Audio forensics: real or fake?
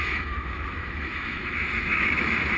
fake